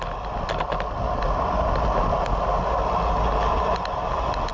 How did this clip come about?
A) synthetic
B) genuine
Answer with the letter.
B